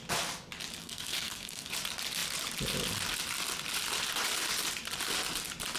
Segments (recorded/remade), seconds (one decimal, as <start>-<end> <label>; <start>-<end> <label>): 0.0-0.8 recorded; 0.8-1.7 remade; 1.7-5.8 recorded